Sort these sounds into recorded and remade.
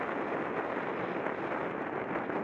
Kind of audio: recorded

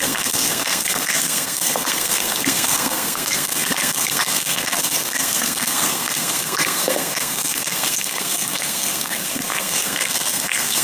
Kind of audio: remade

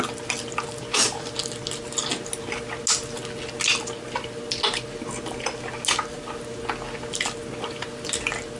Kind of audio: recorded